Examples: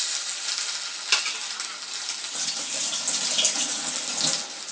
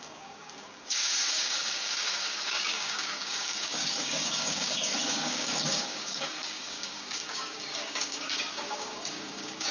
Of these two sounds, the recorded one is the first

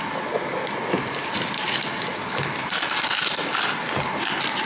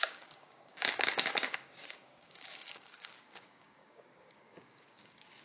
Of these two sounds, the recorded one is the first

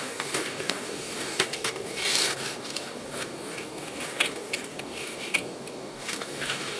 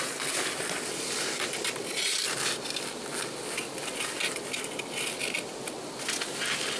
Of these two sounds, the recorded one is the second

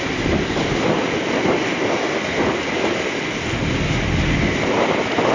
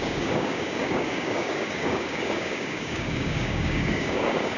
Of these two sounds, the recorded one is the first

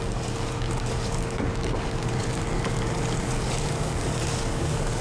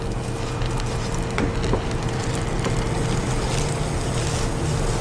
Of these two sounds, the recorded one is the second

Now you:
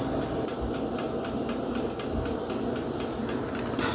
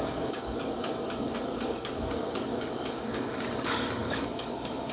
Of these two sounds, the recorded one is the first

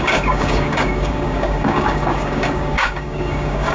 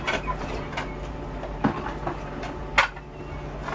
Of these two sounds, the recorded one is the second